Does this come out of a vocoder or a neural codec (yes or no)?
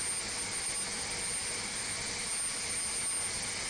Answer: no